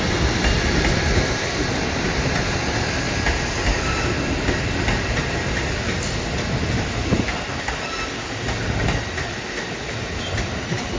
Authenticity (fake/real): real